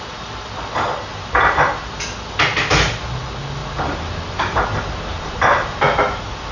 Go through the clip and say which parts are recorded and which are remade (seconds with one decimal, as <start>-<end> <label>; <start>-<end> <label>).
0.0-1.1 recorded; 1.1-1.9 remade; 1.9-3.6 recorded; 3.6-5.8 remade; 5.8-6.5 recorded